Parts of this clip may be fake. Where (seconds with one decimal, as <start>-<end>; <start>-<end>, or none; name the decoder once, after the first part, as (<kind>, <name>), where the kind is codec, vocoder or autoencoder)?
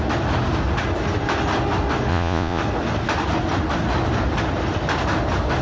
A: 2.1-2.6 (vocoder, Vocos)